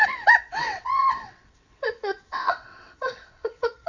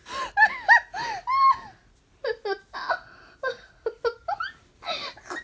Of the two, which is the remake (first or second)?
first